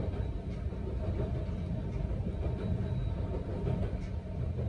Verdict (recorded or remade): recorded